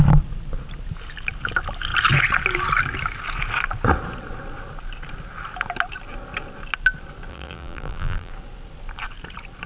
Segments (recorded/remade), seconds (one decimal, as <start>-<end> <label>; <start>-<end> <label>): 0.0-7.3 recorded; 7.3-8.3 remade; 8.3-9.7 recorded